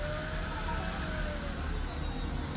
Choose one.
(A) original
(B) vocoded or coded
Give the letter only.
A